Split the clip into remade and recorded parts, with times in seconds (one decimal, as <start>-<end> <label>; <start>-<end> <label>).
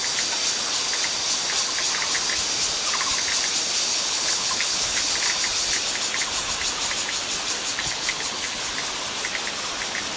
0.0-3.9 recorded; 3.9-5.1 remade; 5.1-7.7 recorded; 7.7-8.6 remade; 8.6-10.2 recorded